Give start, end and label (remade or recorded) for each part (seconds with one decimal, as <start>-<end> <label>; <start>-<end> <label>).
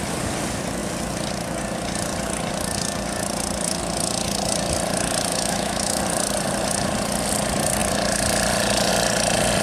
0.0-5.3 recorded; 5.3-6.0 remade; 6.0-9.6 recorded